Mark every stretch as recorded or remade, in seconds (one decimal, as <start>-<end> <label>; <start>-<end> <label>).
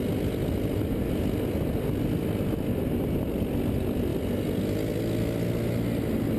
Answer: 0.0-6.4 recorded